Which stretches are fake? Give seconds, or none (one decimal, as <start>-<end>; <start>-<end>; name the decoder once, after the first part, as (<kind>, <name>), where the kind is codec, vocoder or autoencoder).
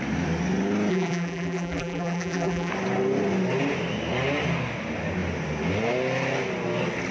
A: 0.9-2.7 (vocoder, BigVGAN v2)